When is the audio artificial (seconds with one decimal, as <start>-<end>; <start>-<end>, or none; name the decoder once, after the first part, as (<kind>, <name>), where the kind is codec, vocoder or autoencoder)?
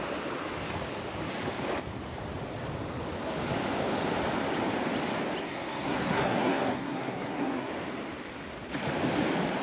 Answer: 5.4-7.7 (codec, SNAC)